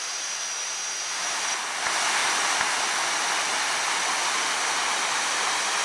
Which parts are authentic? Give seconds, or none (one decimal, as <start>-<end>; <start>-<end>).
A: 0.0-5.8